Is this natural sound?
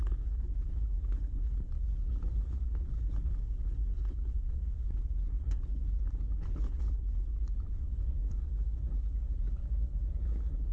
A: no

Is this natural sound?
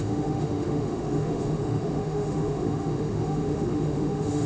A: no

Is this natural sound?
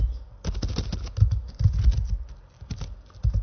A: yes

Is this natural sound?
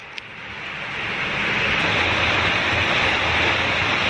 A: yes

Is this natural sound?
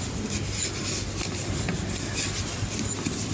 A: yes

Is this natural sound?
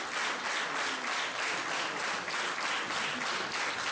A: yes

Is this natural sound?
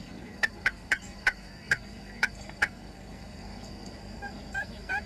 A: no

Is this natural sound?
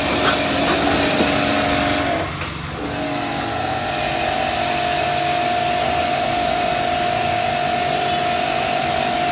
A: yes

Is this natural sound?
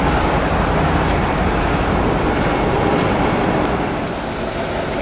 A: yes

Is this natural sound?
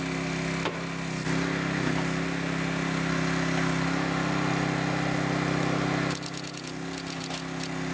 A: yes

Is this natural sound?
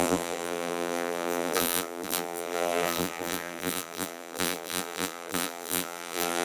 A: no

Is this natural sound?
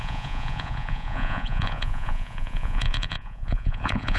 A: no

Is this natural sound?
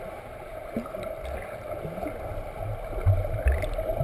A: yes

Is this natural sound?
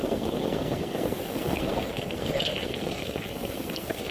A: no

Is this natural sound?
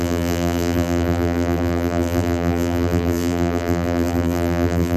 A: no